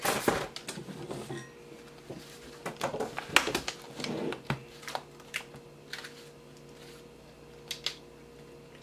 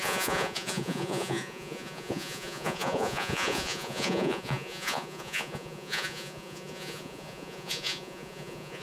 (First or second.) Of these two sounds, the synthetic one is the second